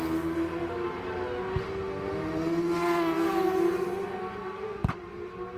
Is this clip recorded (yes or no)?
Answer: yes